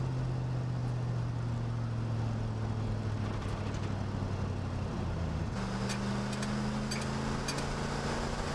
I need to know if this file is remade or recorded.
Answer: recorded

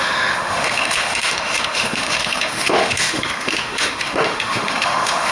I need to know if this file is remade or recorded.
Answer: remade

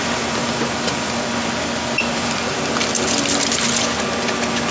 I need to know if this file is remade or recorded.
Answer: recorded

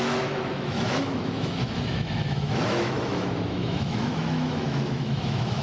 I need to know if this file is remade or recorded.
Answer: remade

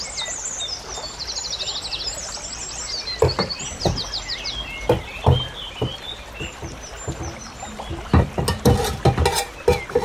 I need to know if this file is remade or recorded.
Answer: recorded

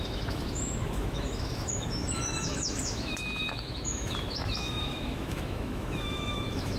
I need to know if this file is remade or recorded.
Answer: remade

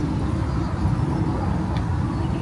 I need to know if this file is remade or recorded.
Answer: recorded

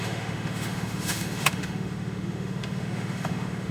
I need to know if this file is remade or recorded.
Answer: remade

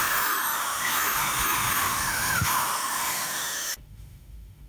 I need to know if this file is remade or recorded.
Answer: remade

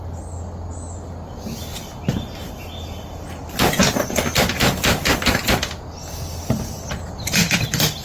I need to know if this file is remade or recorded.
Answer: recorded